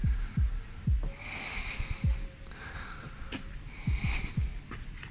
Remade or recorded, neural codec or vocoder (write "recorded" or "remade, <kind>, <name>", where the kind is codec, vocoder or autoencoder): recorded